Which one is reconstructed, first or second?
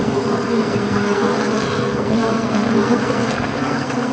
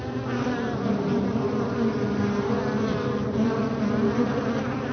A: first